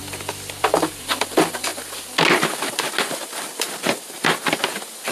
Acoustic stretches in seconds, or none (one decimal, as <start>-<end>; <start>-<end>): 1.1-5.1